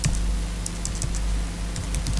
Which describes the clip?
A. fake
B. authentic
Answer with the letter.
B